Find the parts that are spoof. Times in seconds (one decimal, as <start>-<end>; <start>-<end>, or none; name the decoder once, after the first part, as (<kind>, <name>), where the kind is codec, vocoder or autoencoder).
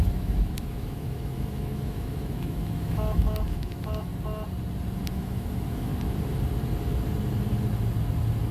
0.0-4.1 (autoencoder, DAC-VAE); 5.1-5.9